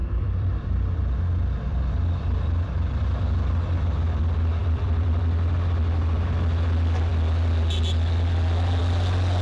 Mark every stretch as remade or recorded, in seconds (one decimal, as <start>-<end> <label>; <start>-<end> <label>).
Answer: 0.0-1.0 remade; 1.0-1.7 recorded; 1.7-3.5 remade; 3.5-4.6 recorded; 4.6-5.2 remade; 5.2-9.4 recorded

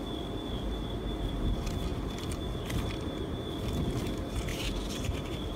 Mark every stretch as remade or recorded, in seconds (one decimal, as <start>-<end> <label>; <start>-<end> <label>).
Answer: 0.0-4.5 recorded; 4.5-5.6 remade

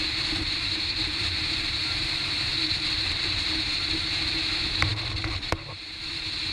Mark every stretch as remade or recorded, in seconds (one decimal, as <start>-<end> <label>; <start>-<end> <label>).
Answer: 0.0-6.5 remade

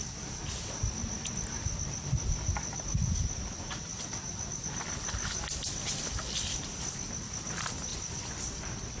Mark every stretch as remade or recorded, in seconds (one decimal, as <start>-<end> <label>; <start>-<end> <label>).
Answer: 0.0-7.9 recorded; 7.9-9.0 remade

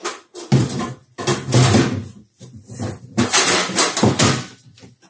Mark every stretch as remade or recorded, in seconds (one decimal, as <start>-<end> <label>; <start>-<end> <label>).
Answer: 0.0-1.0 remade; 1.0-2.3 recorded; 2.3-5.1 remade

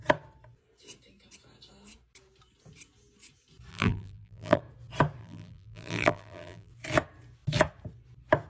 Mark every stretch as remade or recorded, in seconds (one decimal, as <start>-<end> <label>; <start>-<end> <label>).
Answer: 0.0-3.7 recorded; 3.7-4.6 remade; 4.6-5.2 recorded; 5.2-6.7 remade; 6.7-8.5 recorded